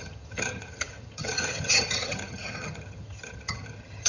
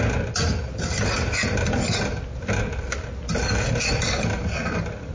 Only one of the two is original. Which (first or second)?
second